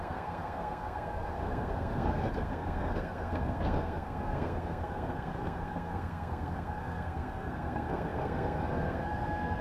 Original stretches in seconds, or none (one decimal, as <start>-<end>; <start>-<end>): none